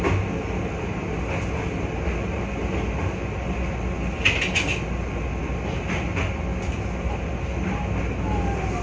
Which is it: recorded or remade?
recorded